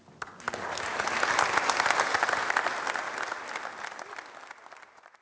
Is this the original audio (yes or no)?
yes